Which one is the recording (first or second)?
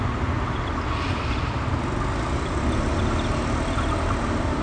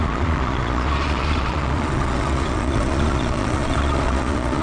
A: first